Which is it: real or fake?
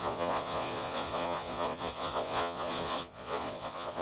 fake